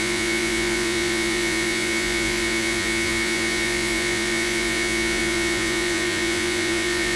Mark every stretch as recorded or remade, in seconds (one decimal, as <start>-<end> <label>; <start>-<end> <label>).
0.0-7.2 remade